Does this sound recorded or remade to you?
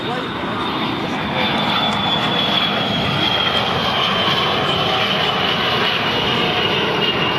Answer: recorded